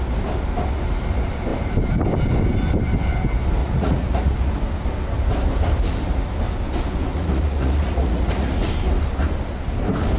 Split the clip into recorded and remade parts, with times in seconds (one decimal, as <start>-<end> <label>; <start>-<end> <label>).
0.0-3.6 recorded; 3.6-4.5 remade; 4.5-7.1 recorded; 7.1-8.7 remade; 8.7-10.2 recorded